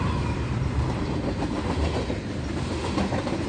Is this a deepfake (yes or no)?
no